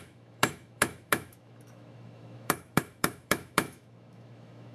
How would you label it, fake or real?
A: fake